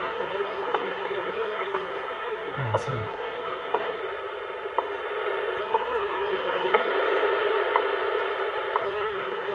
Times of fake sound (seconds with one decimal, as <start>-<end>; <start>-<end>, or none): 0.0-4.0; 5.6-6.9; 8.8-9.5